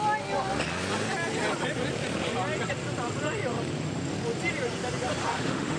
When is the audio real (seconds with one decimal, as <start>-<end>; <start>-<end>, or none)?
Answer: 0.0-5.2